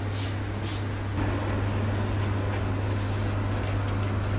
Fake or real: real